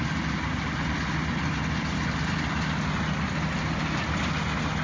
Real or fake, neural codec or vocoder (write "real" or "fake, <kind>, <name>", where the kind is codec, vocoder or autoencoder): real